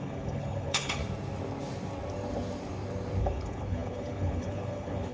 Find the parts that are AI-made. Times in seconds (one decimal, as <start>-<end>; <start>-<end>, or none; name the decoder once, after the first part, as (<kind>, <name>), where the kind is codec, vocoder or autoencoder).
0.0-1.0 (codec, HILCodec); 3.2-5.1